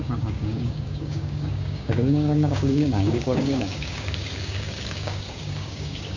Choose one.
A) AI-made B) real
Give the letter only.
A